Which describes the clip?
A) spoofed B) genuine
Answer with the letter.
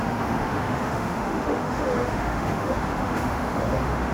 A